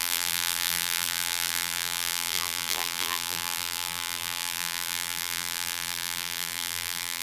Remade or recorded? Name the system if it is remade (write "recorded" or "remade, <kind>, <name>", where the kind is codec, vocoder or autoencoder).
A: remade, vocoder, BigVGAN v2